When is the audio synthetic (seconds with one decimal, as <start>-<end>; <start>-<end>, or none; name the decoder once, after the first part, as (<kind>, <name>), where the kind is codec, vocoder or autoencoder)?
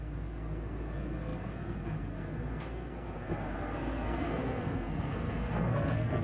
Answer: 0.0-6.2 (codec, SNAC)